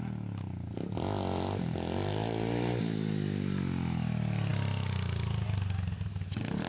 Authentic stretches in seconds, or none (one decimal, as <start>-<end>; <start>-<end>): 0.0-6.7